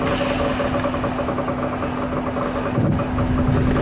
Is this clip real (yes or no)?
yes